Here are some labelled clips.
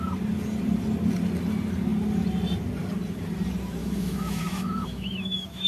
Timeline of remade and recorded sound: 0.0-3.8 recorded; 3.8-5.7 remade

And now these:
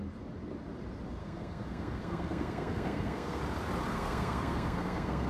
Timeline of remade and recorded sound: 0.0-1.2 recorded; 1.2-3.4 remade; 3.4-3.9 recorded; 3.9-5.3 remade

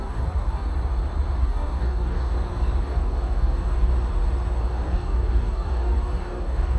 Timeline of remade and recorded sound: 0.0-0.7 remade; 0.7-1.4 recorded; 1.4-2.3 remade; 2.3-2.8 recorded; 2.8-3.9 remade; 3.9-4.6 recorded; 4.6-6.8 remade

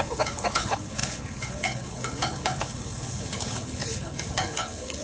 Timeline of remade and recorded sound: 0.0-5.0 remade

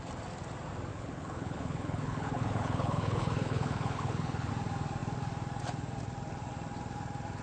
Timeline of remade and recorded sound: 0.0-0.9 recorded; 0.9-4.5 remade; 4.5-7.4 recorded

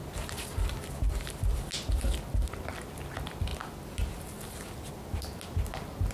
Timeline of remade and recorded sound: 0.0-1.7 remade; 1.7-3.5 recorded; 3.5-4.9 remade; 4.9-6.1 recorded

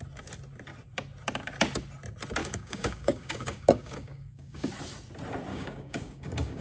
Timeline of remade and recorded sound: 0.0-2.4 recorded; 2.4-4.7 remade; 4.7-5.5 recorded; 5.5-6.6 remade